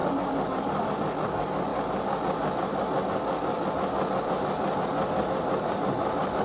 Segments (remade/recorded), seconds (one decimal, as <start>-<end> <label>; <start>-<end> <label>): 0.0-6.4 recorded